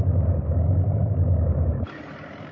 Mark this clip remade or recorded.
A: recorded